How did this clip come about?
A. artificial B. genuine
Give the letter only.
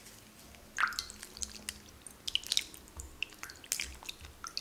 B